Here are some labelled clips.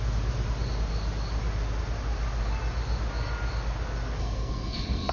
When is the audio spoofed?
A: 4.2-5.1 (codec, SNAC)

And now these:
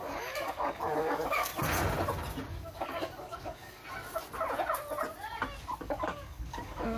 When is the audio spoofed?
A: 0.0-1.5 (codec, DAC); 2.5-3.8; 5.8-7.0

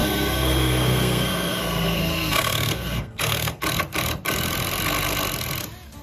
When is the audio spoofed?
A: 0.0-3.6 (codec, SNAC)

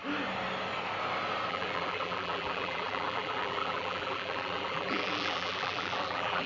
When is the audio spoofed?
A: 1.5-6.5 (vocoder, BigVGAN v2)

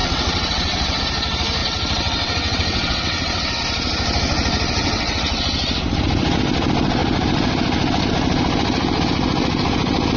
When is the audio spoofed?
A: 0.0-1.0 (vocoder, WaveNeXt); 1.6-3.6; 4.8-5.4

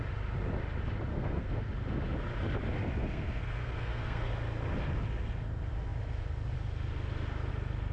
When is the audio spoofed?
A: 1.1-1.7 (codec, SNAC); 3.0-4.3

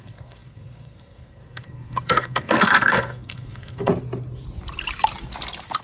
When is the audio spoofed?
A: 0.0-3.9 (codec, SNAC)

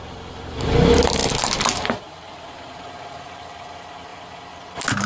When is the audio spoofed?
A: 0.0-1.2 (vocoder, BigVGAN v2); 1.9-5.1